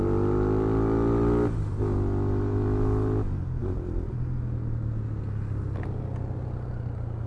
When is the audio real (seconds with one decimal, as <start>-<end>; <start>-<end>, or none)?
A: 0.0-7.3